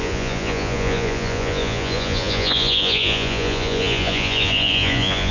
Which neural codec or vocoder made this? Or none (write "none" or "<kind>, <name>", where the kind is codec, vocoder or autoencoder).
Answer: vocoder, Vocos